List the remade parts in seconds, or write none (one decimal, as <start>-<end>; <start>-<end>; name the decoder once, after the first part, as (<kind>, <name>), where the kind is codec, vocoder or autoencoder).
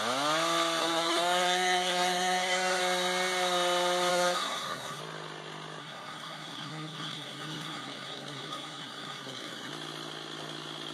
0.8-2.8 (codec, SNAC); 4.1-5.0; 5.8-9.7